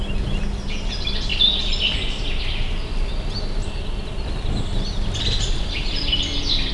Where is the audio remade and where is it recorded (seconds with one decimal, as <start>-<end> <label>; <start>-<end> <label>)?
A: 0.0-6.7 recorded